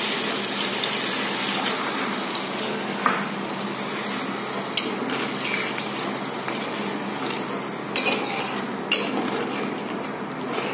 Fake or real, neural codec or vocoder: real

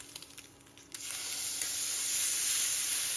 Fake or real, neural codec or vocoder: real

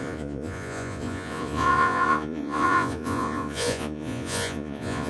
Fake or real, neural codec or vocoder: fake, vocoder, Vocos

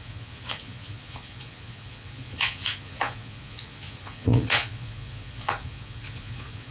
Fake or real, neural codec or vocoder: fake, vocoder, Vocos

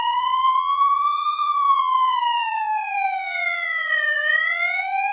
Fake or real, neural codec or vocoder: fake, vocoder, Vocos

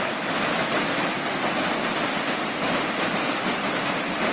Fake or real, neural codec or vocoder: real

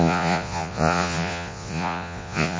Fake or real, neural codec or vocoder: fake, vocoder, Vocos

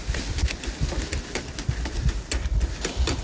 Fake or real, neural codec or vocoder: real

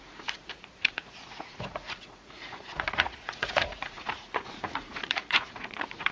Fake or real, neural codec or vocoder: fake, vocoder, Vocos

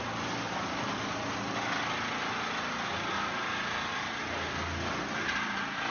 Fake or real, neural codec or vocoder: real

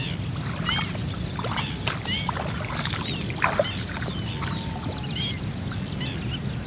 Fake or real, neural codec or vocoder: real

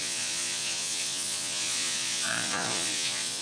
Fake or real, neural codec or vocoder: fake, vocoder, Vocos